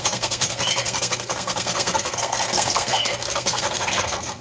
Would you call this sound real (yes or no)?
no